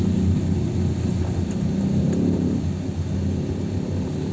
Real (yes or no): yes